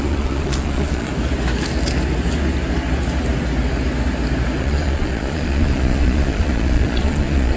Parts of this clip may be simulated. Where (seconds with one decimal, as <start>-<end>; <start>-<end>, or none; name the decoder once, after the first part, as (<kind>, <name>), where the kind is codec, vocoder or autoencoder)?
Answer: 0.0-1.1 (vocoder, Vocos); 4.6-7.6